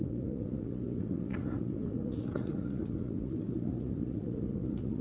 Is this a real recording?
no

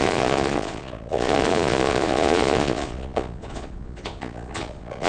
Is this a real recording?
no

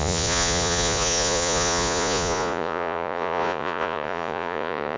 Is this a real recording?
no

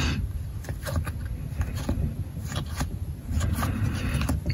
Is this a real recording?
yes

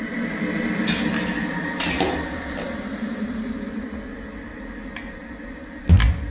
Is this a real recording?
yes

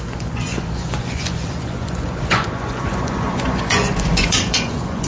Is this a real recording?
no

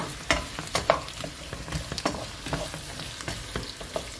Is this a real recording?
yes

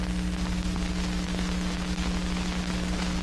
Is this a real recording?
yes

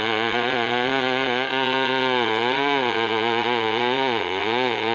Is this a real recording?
no